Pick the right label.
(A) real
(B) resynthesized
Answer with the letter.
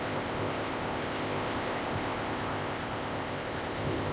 B